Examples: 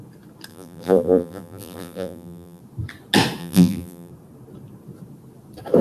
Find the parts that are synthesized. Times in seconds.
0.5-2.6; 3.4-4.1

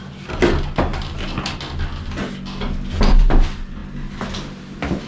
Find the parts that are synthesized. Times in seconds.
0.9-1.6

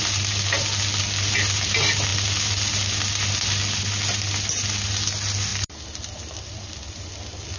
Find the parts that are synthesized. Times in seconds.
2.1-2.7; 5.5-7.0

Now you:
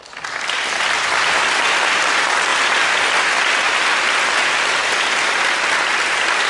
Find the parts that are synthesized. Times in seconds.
4.8-5.5

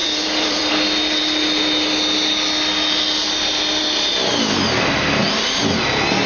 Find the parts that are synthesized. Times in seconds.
0.0-0.7

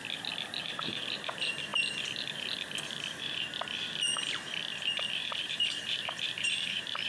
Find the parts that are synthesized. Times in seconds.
0.6-1.7; 5.2-7.1